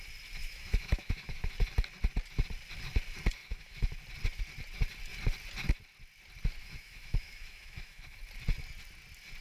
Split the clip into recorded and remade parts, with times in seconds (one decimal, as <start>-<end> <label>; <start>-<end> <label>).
0.0-0.4 recorded; 0.4-1.5 remade; 1.5-3.4 recorded; 3.4-3.9 remade; 3.9-6.6 recorded; 6.6-8.2 remade; 8.2-9.4 recorded